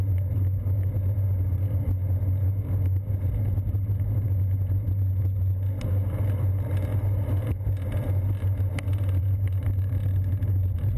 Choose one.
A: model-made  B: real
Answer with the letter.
B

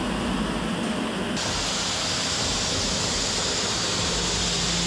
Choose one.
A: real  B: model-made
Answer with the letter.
A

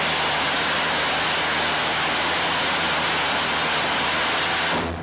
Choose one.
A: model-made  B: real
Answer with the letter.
B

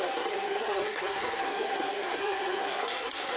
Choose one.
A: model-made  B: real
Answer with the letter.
A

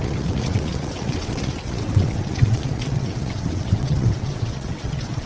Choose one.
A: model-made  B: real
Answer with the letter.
A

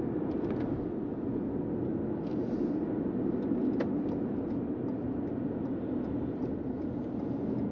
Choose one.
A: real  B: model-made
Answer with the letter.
A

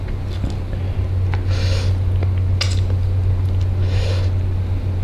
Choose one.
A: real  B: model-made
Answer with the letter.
A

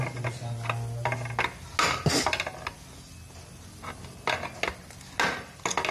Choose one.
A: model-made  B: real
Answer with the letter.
B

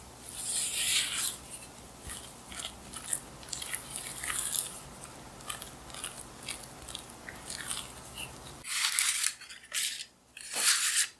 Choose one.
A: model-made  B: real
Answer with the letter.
B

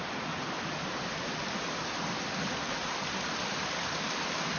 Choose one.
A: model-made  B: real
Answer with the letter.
B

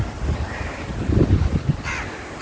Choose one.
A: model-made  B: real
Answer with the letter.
B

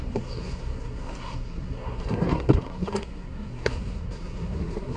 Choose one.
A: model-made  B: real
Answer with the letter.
A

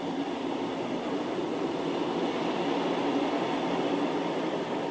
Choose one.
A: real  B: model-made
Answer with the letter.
B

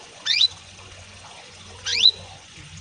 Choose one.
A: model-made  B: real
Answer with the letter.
A